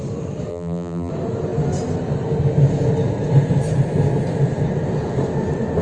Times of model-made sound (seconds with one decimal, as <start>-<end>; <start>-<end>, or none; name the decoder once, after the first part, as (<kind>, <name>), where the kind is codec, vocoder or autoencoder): 0.5-1.1 (vocoder, BigVGAN v2)